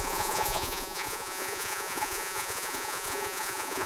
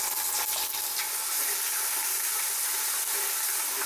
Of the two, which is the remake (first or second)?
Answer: first